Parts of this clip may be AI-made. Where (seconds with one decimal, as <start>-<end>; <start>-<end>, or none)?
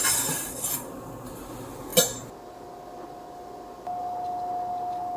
none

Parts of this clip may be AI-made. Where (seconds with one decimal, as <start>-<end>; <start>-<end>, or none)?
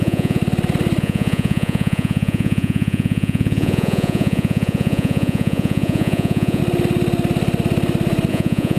0.0-0.4; 1.0-6.6; 8.3-8.8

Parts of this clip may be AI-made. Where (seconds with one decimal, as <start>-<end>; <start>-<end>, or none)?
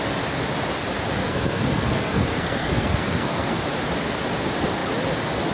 1.2-3.6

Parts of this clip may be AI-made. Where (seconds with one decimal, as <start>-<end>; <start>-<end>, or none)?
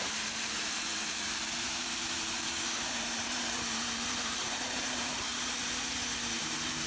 0.0-5.3; 6.4-6.9